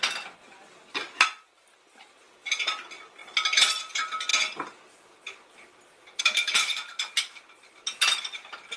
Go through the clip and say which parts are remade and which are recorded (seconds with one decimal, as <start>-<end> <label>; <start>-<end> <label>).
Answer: 0.0-0.4 recorded; 0.4-2.6 remade; 2.6-8.8 recorded